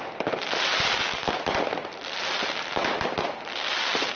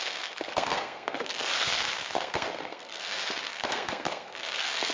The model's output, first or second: second